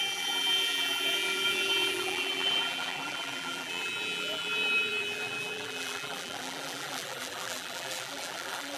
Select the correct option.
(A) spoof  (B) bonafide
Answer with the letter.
A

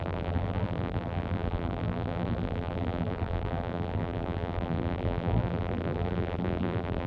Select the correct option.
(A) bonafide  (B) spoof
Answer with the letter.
B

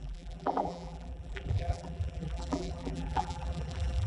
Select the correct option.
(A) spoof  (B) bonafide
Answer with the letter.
A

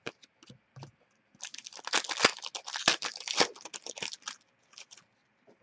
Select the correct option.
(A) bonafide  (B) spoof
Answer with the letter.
A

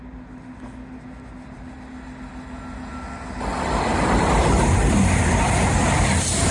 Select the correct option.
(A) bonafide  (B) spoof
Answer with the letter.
A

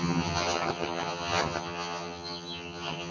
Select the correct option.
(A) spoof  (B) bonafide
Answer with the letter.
A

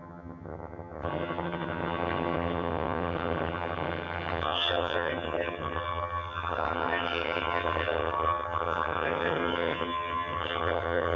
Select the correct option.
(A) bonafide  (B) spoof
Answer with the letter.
B